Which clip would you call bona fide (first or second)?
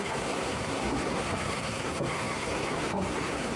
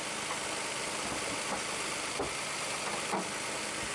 second